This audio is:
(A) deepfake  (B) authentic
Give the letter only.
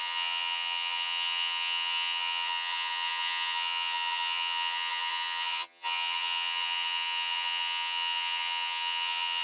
A